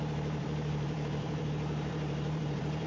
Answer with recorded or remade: remade